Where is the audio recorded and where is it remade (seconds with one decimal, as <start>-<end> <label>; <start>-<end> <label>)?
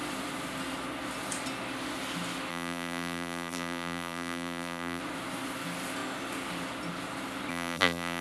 0.0-2.5 recorded; 2.5-5.0 remade; 5.0-7.5 recorded; 7.5-8.2 remade